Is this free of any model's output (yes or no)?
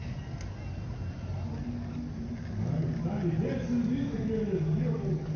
yes